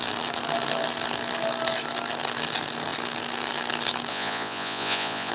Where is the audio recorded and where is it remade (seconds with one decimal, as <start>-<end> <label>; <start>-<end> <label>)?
0.0-4.1 recorded; 4.1-5.3 remade